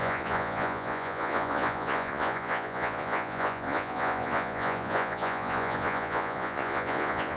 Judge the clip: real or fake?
fake